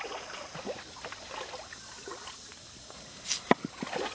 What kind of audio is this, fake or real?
real